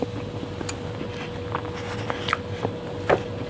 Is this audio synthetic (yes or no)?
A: no